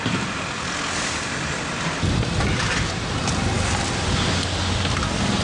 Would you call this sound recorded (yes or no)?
yes